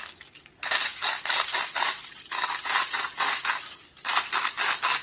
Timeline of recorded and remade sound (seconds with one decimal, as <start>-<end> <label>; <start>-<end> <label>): 0.0-5.0 recorded

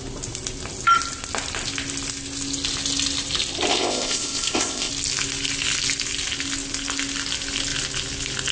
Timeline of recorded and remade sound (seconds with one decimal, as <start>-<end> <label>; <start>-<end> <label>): 0.0-3.7 recorded; 3.7-4.9 remade; 4.9-8.5 recorded

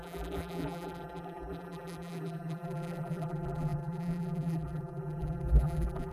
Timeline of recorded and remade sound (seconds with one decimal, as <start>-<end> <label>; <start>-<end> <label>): 0.0-6.1 remade

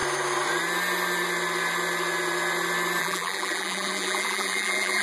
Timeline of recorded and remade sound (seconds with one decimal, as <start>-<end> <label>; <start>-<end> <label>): 0.0-3.0 recorded; 3.0-5.0 remade

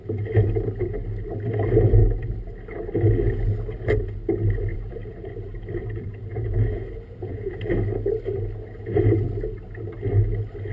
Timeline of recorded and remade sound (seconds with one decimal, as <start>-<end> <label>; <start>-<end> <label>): 0.0-4.7 recorded; 4.7-5.3 remade; 5.3-5.8 recorded; 5.8-7.5 remade; 7.5-10.7 recorded

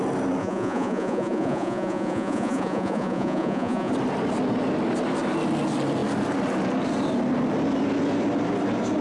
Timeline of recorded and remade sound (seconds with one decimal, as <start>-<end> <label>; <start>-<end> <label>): 0.0-0.4 recorded; 0.4-3.9 remade; 3.9-9.0 recorded

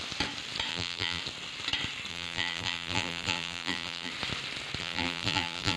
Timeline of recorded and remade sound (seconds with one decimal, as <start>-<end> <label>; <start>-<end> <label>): 0.0-0.7 recorded; 0.7-1.2 remade; 1.2-2.1 recorded; 2.1-4.1 remade; 4.1-4.8 recorded; 4.8-5.8 remade

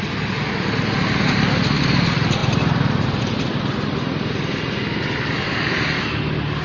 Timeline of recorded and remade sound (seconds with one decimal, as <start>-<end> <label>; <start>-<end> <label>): 0.0-2.4 recorded; 2.4-6.6 remade